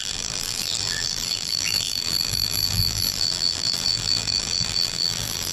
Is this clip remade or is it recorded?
remade